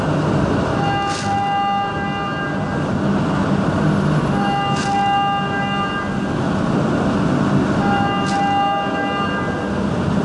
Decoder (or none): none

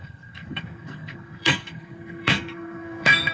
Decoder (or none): codec, SNAC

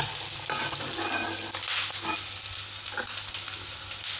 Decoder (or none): none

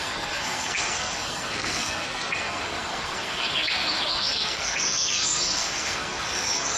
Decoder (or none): codec, SNAC